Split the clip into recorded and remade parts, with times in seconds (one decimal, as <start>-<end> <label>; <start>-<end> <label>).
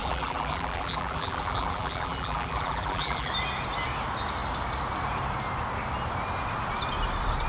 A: 0.0-3.3 remade; 3.3-7.5 recorded